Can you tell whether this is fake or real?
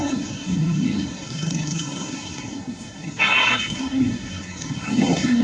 fake